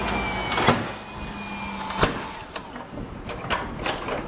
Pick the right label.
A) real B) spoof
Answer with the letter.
A